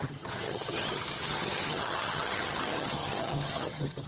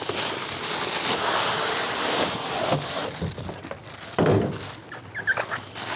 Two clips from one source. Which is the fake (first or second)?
first